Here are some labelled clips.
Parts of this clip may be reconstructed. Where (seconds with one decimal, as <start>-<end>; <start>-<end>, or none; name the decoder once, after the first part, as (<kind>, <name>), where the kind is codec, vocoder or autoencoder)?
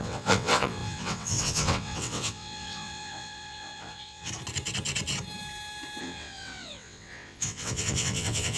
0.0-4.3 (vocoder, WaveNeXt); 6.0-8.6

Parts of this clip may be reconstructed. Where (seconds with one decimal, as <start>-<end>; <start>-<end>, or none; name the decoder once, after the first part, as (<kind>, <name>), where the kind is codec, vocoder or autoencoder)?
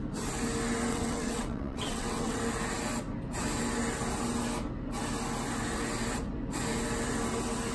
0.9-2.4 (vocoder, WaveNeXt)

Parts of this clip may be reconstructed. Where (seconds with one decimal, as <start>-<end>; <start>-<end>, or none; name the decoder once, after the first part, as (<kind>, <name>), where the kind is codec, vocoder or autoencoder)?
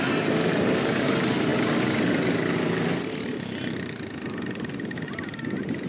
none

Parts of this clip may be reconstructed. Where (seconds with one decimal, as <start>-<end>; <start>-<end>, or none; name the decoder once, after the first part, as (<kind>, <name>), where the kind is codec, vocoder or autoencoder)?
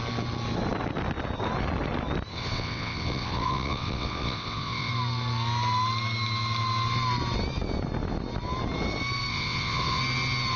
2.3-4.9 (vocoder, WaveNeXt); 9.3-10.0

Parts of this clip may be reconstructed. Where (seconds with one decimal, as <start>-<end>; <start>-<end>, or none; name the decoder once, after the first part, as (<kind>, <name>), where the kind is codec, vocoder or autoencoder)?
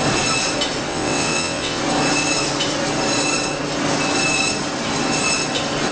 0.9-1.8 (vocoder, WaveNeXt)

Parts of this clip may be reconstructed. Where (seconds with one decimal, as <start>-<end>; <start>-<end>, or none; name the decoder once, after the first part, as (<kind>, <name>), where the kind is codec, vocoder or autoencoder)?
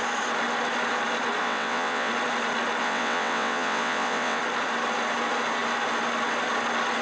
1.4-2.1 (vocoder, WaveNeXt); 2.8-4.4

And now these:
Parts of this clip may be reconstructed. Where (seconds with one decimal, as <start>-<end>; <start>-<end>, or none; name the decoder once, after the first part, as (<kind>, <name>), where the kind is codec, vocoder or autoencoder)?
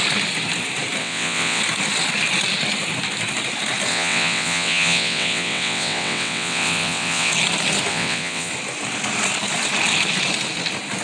1.0-1.6 (vocoder, WaveNeXt); 3.9-7.3; 7.9-8.5